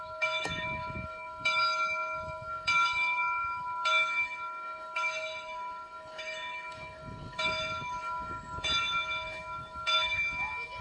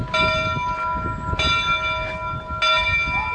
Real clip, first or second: second